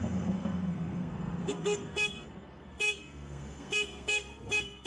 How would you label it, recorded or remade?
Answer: remade